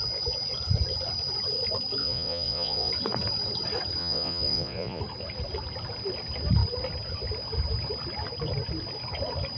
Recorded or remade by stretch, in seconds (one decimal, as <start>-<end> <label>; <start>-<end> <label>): 0.0-2.0 recorded; 2.0-2.9 remade; 2.9-4.0 recorded; 4.0-5.0 remade; 5.0-9.6 recorded